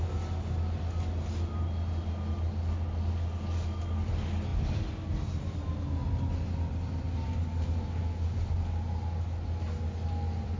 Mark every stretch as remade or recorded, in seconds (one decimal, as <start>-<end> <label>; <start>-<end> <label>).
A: 0.0-10.6 recorded